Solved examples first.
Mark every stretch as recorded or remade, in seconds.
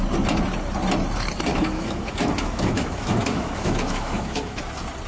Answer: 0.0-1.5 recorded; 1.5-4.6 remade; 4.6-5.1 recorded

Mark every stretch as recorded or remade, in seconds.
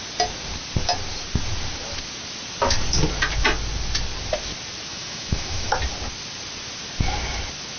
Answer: 0.0-4.9 recorded; 4.9-5.7 remade; 5.7-7.8 recorded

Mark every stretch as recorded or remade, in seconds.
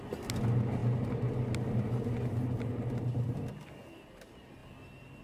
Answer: 0.0-5.2 recorded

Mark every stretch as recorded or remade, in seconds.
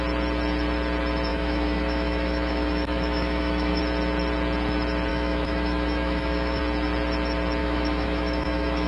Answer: 0.0-1.3 recorded; 1.3-3.8 remade; 3.8-5.1 recorded; 5.1-6.6 remade; 6.6-7.6 recorded; 7.6-8.9 remade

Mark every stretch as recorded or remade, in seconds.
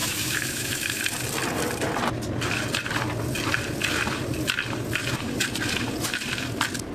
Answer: 0.0-1.0 remade; 1.0-6.9 recorded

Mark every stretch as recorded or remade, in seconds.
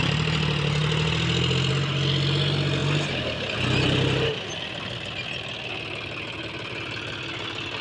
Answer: 0.0-7.8 recorded